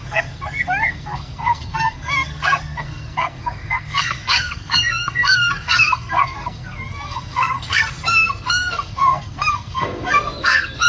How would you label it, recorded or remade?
remade